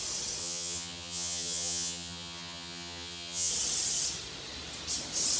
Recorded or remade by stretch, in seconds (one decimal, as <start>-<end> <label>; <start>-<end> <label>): 0.0-0.4 recorded; 0.4-3.5 remade; 3.5-5.4 recorded